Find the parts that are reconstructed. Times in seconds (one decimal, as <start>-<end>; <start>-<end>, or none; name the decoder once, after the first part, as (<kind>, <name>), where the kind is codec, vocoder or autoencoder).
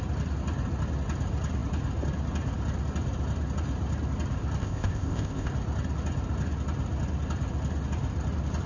4.6-5.5 (codec, ZipCodec)